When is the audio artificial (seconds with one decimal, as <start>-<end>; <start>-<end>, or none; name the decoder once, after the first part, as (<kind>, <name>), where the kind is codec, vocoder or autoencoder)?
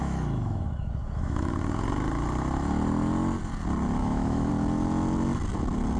0.0-1.5 (autoencoder, DAC-VAE); 4.0-4.5